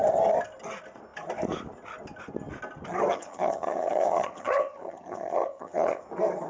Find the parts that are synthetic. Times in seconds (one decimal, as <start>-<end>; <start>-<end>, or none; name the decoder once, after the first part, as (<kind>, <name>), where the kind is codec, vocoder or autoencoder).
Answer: 3.1-6.0 (vocoder, HiFi-GAN)